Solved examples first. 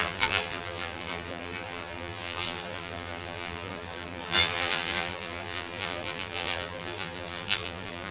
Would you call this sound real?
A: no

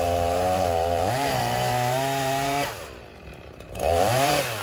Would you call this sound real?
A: no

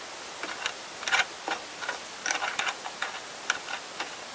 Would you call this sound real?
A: yes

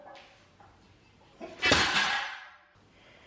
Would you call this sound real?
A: yes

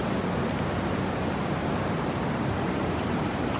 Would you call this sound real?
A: yes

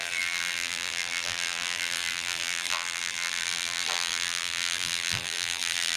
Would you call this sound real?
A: no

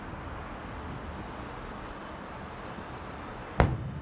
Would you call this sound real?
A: yes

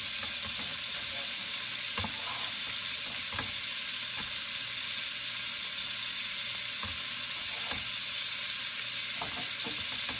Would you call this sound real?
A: yes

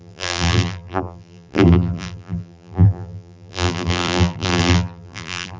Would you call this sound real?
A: no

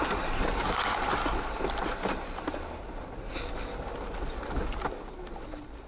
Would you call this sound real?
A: yes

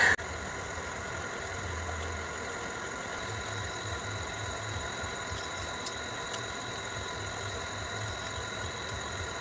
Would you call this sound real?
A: no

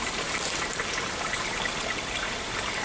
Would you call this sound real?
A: no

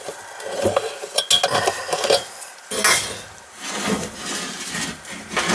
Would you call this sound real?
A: yes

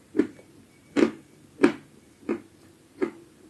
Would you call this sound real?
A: no